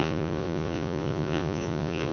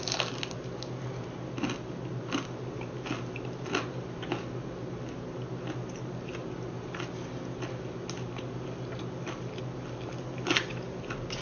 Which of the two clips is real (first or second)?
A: second